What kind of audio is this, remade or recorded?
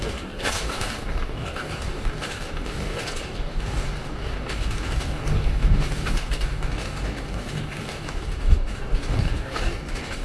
remade